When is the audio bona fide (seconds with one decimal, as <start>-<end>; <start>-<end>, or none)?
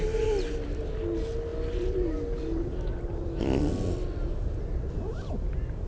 0.0-5.9